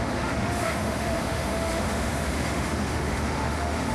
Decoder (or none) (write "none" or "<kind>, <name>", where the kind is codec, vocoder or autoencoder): autoencoder, DAC-VAE